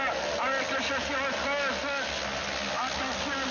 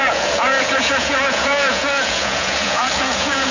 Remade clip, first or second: second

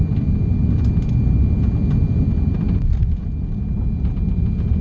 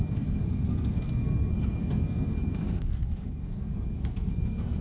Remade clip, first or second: second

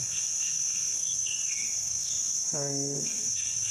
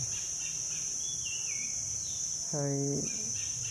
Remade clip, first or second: first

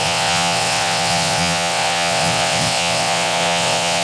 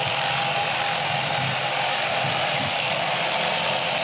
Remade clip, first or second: first